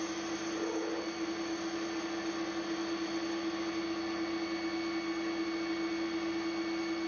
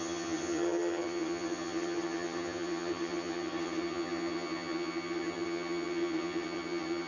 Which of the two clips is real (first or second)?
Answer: first